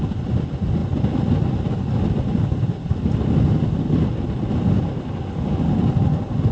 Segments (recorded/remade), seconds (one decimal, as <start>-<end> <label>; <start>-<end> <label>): 0.0-6.5 recorded